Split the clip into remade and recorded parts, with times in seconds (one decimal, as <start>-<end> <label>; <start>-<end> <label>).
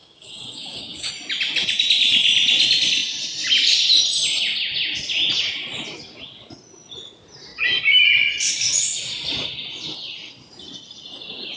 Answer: 0.0-1.1 remade; 1.1-11.6 recorded